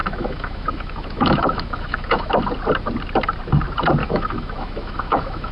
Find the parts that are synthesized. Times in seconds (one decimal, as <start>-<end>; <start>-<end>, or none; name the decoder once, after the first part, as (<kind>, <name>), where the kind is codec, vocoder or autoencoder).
0.0-2.4 (autoencoder, DAC-VAE); 4.0-5.5